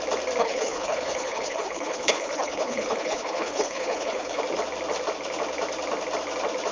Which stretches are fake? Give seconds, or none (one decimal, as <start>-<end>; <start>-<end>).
0.4-4.4